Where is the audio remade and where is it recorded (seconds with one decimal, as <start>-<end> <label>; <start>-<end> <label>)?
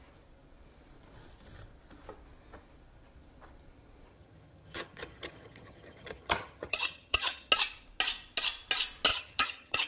0.0-4.1 recorded; 4.1-7.5 remade; 7.5-9.1 recorded; 9.1-9.9 remade